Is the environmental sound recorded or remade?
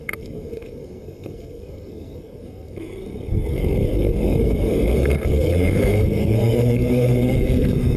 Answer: remade